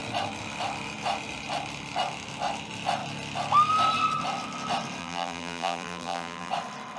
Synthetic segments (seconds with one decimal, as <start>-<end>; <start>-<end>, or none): 5.0-6.5